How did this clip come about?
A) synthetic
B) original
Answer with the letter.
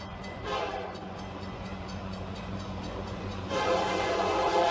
A